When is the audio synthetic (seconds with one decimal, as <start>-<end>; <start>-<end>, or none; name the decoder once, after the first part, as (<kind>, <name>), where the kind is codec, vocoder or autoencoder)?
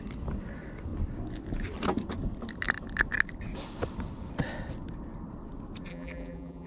5.9-6.7 (vocoder, BigVGAN v2)